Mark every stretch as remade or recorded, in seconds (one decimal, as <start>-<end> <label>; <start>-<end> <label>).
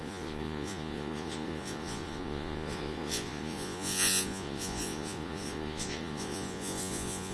0.0-7.3 remade